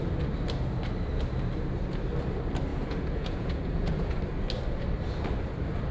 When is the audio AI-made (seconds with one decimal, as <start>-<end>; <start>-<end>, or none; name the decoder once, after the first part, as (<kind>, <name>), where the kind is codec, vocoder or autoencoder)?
2.7-4.2 (vocoder, Vocos)